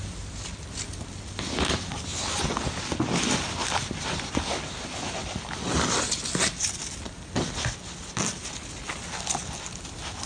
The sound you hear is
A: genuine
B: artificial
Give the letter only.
A